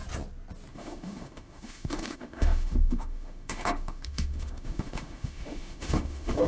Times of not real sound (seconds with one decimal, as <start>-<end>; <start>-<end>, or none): 0.7-6.5

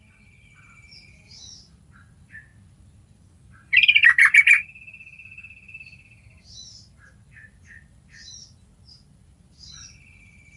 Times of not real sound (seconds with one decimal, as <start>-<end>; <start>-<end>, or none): 0.0-10.6

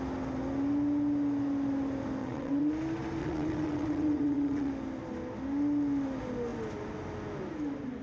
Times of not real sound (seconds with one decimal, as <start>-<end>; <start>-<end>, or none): 2.2-2.7; 3.2-4.7

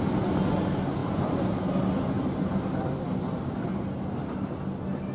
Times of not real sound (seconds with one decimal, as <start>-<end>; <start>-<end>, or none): 1.0-1.9

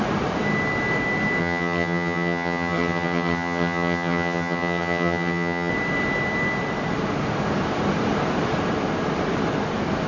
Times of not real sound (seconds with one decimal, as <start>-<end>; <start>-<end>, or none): 1.4-5.7

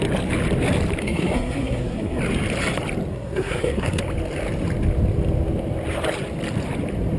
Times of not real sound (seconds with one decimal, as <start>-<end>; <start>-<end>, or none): 1.0-2.2; 3.1-4.0